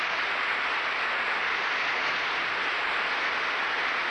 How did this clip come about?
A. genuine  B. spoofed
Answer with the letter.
A